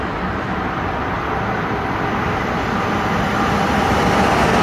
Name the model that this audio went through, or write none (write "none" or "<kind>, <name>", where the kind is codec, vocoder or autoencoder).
none